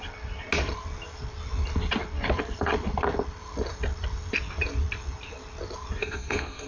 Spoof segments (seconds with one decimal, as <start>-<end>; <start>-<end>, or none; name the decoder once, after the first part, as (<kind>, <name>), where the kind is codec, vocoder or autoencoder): 6.0-6.7 (codec, SNAC)